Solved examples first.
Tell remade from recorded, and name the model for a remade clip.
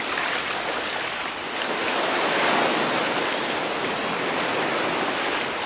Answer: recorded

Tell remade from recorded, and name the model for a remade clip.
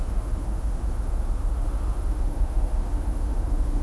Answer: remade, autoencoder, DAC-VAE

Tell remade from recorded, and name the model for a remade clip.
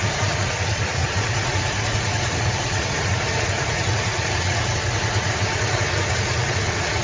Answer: remade, vocoder, Vocos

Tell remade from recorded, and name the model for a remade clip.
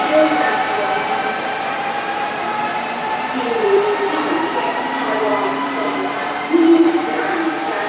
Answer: remade, vocoder, BigVGAN v2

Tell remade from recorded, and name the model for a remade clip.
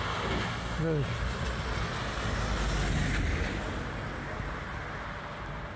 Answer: recorded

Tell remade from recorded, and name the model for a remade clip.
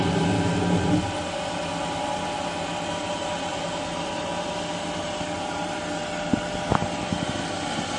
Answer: recorded